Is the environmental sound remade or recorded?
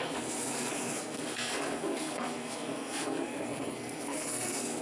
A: remade